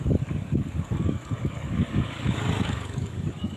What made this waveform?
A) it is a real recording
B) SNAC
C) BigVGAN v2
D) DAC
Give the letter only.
D